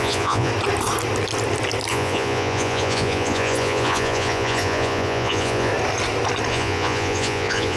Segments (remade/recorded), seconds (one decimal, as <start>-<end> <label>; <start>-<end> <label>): 0.0-0.5 remade; 0.5-1.9 recorded; 1.9-5.7 remade; 5.7-6.5 recorded; 6.5-7.8 remade